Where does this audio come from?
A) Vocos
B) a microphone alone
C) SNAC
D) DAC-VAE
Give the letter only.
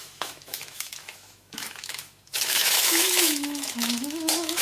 D